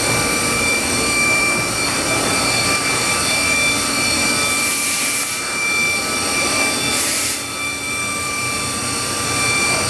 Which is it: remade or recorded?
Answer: remade